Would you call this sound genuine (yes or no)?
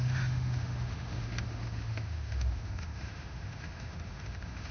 no